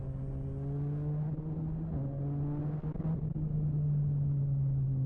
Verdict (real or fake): real